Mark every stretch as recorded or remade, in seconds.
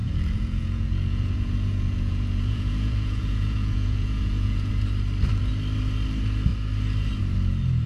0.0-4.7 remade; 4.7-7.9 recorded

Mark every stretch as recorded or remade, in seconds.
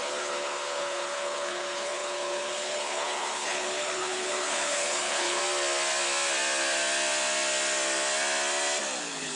0.0-5.4 remade; 5.4-9.0 recorded; 9.0-9.4 remade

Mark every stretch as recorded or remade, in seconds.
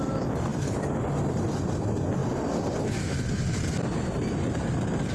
0.0-5.1 recorded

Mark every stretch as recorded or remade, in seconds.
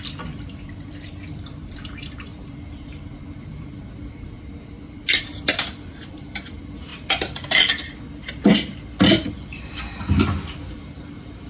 0.0-6.9 remade; 6.9-8.3 recorded; 8.3-11.5 remade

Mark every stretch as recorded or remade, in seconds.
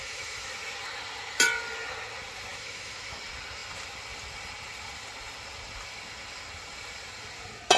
0.0-0.5 remade; 0.5-2.5 recorded; 2.5-3.2 remade; 3.2-7.8 recorded